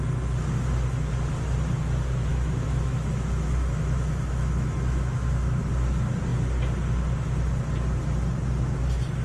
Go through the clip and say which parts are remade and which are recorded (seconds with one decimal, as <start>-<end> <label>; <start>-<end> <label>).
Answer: 0.0-2.3 recorded; 2.3-5.6 remade; 5.6-9.2 recorded